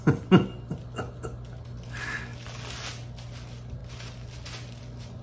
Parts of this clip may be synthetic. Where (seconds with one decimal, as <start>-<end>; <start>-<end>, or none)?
none